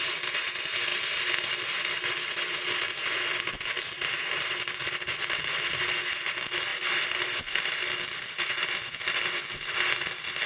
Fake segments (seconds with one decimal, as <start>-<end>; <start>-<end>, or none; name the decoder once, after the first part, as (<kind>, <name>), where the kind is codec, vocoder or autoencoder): none